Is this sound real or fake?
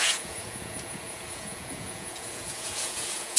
fake